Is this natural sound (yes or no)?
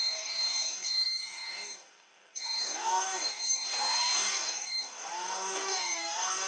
no